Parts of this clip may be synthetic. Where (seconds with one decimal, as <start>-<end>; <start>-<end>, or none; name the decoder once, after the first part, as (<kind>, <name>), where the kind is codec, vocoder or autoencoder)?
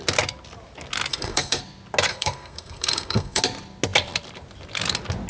1.1-1.6 (codec, SNAC); 2.1-3.4